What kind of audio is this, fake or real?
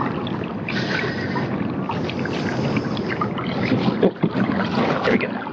fake